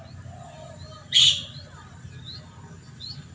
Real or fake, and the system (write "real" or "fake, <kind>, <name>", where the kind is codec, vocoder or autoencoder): real